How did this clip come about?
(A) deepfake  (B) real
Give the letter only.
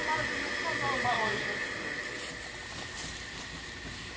B